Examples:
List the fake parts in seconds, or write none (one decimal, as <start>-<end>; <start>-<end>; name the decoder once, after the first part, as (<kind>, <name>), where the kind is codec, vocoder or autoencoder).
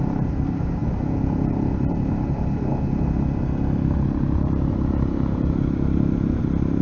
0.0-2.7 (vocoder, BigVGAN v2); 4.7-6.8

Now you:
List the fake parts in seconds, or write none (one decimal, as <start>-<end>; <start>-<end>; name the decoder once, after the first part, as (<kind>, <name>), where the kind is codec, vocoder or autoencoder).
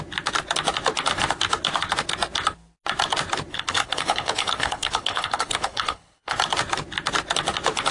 3.5-6.4 (codec, HILCodec)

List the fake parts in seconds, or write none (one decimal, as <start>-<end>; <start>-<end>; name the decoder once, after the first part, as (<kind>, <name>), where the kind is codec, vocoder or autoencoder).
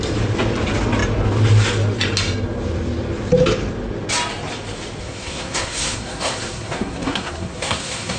5.0-8.2 (codec, SNAC)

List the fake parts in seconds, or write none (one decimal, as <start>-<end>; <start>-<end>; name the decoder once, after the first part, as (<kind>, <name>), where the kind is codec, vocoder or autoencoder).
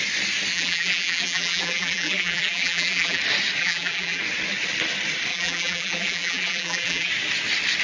0.5-3.2 (vocoder, BigVGAN v2); 3.6-4.2; 5.3-7.1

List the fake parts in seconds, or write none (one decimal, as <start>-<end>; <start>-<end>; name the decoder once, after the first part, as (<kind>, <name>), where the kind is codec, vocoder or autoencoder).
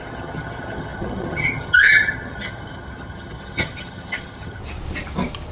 0.0-4.6 (vocoder, HiFi-GAN)